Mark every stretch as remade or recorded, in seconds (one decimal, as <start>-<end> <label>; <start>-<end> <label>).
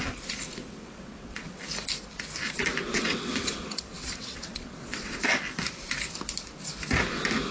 0.0-0.6 recorded; 0.6-1.6 remade; 1.6-2.9 recorded; 2.9-5.2 remade; 5.2-7.5 recorded